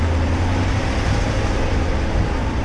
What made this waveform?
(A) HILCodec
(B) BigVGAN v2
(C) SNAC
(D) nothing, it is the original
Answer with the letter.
D